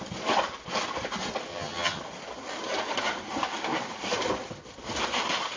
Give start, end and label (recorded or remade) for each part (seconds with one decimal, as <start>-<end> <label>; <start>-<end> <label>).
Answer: 0.0-1.5 recorded; 1.5-2.0 remade; 2.0-5.6 recorded